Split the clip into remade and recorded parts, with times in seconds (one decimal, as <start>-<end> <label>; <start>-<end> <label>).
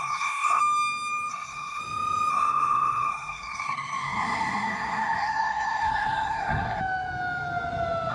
0.0-0.6 remade; 0.6-1.3 recorded; 1.3-1.8 remade; 1.8-2.3 recorded; 2.3-6.8 remade; 6.8-8.1 recorded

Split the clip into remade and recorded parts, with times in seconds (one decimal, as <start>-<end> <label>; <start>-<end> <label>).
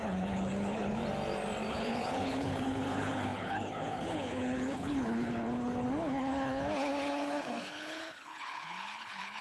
0.0-1.0 remade; 1.0-1.7 recorded; 1.7-9.4 remade